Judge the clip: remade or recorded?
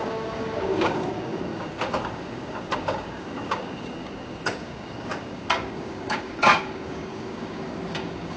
remade